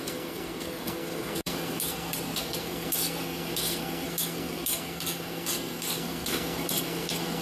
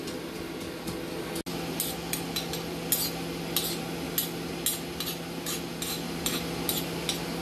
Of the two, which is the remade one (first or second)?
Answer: first